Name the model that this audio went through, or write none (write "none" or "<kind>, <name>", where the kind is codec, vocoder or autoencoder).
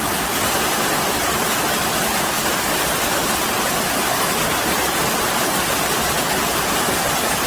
none